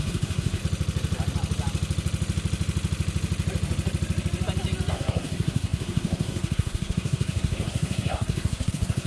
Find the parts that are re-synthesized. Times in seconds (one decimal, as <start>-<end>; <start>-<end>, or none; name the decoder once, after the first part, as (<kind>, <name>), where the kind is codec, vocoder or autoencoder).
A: 0.0-0.6 (codec, SNAC); 4.9-9.1